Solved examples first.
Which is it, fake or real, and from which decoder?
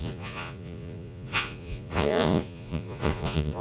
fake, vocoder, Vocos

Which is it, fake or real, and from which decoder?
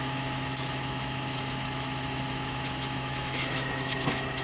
fake, autoencoder, DAC-VAE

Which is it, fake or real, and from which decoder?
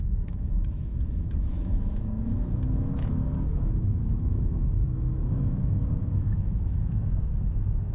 fake, autoencoder, DAC-VAE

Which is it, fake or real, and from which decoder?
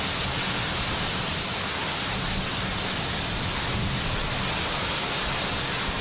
real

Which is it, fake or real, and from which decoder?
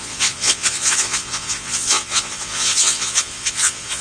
fake, vocoder, Vocos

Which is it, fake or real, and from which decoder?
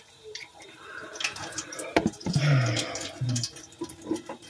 fake, vocoder, BigVGAN v2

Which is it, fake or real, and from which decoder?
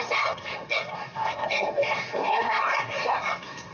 fake, codec, SNAC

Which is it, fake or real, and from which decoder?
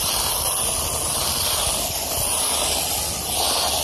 real